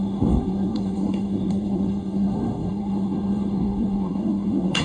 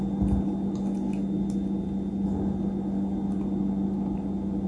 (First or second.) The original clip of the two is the second